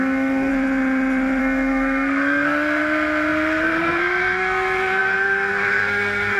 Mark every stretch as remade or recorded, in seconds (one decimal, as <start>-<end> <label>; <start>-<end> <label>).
0.0-0.5 remade; 0.5-1.4 recorded; 1.4-6.4 remade